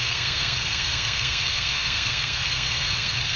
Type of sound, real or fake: fake